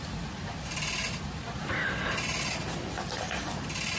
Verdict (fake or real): real